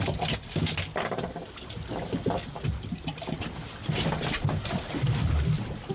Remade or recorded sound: recorded